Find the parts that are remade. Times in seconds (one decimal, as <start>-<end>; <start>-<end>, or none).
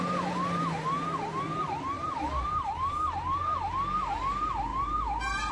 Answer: 1.5-3.7; 4.7-5.5